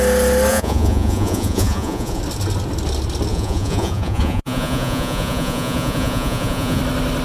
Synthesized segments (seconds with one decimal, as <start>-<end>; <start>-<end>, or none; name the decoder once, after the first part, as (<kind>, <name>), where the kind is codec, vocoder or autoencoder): 0.5-2.2 (vocoder, Vocos); 3.3-6.8